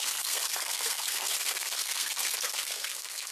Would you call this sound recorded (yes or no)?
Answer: no